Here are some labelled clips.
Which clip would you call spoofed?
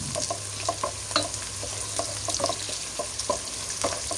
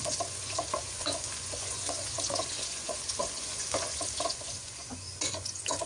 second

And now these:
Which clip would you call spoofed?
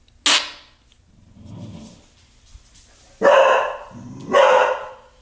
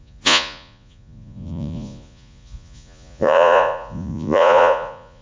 second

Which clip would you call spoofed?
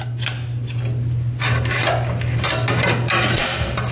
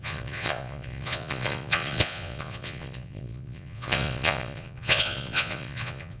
second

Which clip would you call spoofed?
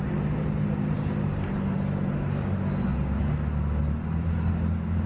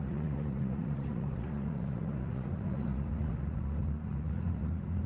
second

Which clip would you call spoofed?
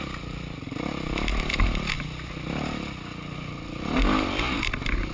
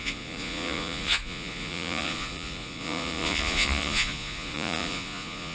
second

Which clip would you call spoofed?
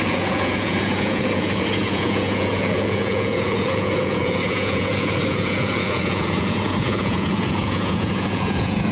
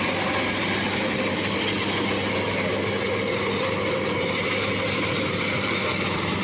first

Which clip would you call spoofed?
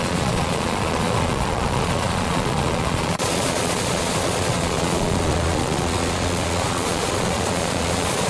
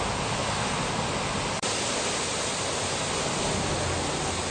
first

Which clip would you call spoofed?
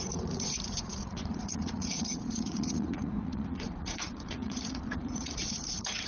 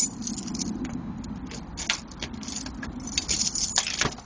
first